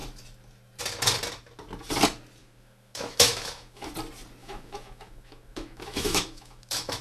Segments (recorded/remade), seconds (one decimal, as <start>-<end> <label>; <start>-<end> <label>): 0.0-2.4 recorded; 2.4-3.9 remade; 3.9-4.4 recorded; 4.4-7.0 remade